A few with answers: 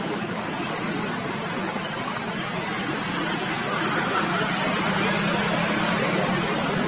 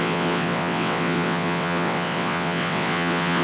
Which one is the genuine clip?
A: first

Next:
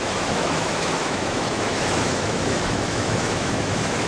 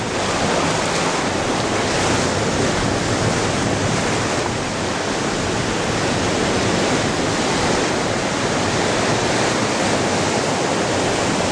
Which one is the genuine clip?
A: second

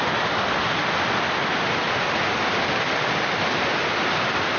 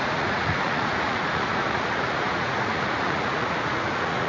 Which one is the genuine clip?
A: first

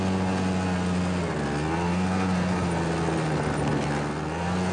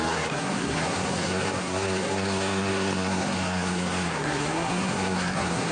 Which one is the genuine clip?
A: first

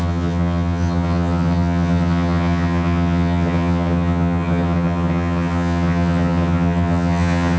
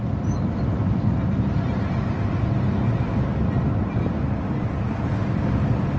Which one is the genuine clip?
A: second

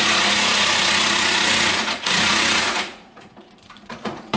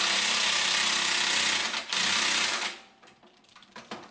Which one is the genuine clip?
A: second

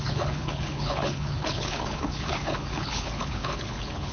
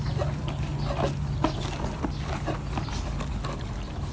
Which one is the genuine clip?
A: second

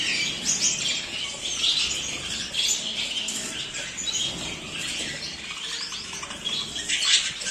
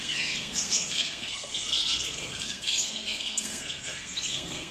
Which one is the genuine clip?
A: first